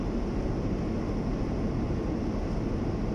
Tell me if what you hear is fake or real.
real